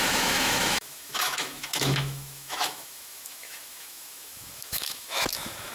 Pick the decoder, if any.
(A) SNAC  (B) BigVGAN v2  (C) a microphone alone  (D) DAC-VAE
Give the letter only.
D